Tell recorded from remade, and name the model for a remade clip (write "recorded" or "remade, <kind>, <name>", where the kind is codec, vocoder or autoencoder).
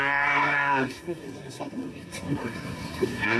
remade, codec, SNAC